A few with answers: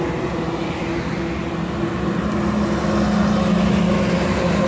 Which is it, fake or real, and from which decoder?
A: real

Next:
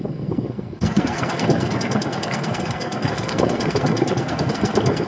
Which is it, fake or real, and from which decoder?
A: fake, codec, SNAC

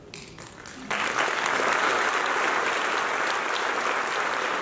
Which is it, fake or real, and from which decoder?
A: real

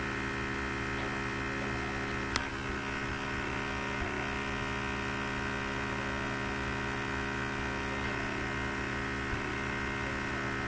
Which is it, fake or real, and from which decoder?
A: real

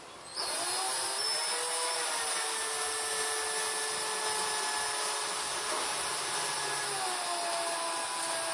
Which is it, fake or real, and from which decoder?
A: real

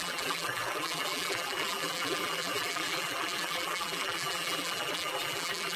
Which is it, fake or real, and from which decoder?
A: fake, vocoder, BigVGAN v2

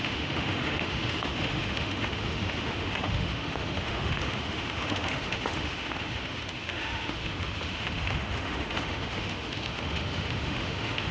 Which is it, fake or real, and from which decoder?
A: fake, autoencoder, DAC-VAE